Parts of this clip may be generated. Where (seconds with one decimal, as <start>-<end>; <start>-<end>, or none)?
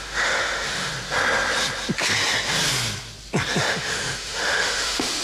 0.0-0.9; 3.6-5.2